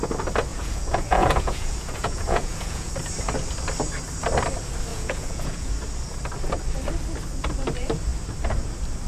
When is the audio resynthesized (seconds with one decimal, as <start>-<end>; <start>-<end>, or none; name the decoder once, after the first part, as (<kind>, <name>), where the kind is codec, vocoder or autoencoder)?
0.5-2.9 (vocoder, Vocos); 4.9-5.7